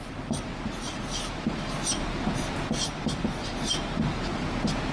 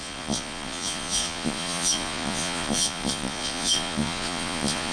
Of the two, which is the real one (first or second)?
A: first